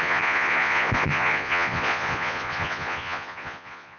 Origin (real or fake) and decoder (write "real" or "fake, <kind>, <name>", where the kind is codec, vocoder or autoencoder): fake, vocoder, Vocos